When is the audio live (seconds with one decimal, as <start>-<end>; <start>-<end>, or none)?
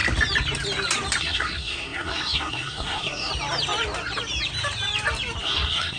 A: 0.0-1.2; 3.3-5.4